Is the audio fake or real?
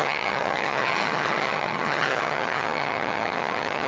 fake